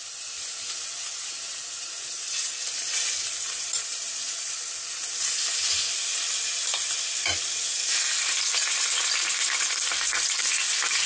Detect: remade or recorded recorded